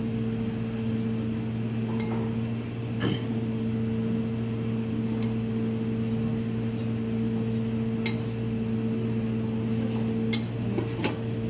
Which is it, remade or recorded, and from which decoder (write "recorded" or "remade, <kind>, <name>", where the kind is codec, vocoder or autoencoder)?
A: recorded